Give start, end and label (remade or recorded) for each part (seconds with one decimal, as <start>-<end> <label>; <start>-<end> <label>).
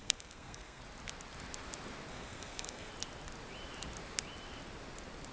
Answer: 0.0-0.8 remade; 0.8-2.1 recorded; 2.1-2.9 remade; 2.9-5.3 recorded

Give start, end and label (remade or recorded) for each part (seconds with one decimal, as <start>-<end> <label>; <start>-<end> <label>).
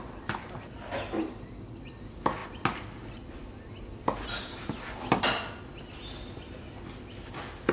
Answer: 0.0-7.7 recorded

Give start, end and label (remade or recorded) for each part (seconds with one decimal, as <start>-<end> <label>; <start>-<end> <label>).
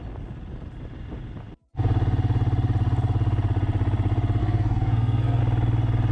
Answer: 0.0-4.4 recorded; 4.4-5.4 remade; 5.4-6.1 recorded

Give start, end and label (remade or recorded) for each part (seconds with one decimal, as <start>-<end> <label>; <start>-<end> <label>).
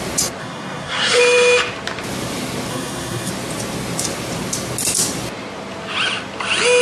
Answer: 0.0-0.4 recorded; 0.4-1.2 remade; 1.2-2.7 recorded; 2.7-3.3 remade; 3.3-6.8 recorded